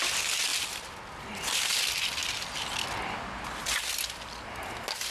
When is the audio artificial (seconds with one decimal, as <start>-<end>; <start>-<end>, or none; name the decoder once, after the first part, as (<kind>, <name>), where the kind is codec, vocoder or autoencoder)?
none